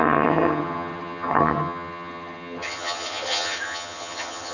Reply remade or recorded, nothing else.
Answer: remade